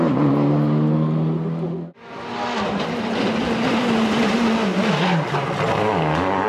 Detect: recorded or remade recorded